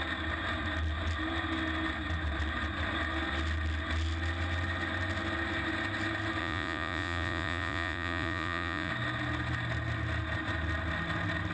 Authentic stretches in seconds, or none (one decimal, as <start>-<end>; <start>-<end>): 0.0-6.4; 8.9-11.5